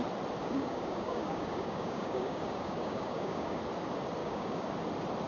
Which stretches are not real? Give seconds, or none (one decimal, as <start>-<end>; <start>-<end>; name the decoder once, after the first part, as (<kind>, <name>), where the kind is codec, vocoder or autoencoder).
0.4-3.6 (codec, DAC); 4.2-4.7